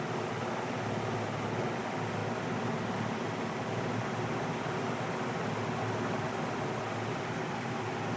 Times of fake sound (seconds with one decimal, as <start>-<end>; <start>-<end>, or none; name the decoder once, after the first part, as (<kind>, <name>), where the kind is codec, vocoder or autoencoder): none